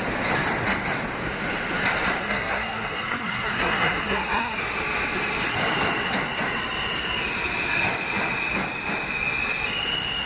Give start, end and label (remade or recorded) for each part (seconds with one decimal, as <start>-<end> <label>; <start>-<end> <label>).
0.0-2.2 recorded; 2.2-4.6 remade; 4.6-10.3 recorded